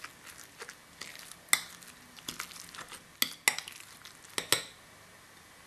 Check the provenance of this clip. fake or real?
real